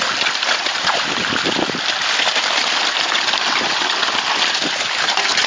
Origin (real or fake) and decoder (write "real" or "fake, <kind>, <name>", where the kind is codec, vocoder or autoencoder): real